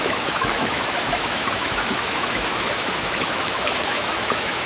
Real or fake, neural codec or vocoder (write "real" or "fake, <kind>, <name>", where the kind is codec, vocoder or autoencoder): fake, autoencoder, DAC-VAE